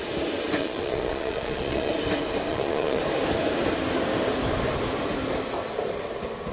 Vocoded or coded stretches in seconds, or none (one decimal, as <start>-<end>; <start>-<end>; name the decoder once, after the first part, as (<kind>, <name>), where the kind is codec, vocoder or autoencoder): 0.6-1.9 (vocoder, Vocos); 2.5-3.0